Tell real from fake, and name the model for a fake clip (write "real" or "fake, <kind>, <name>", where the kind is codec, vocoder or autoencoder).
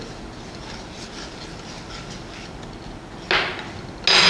real